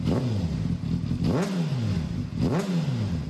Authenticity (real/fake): real